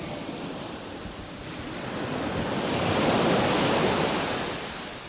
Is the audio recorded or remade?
recorded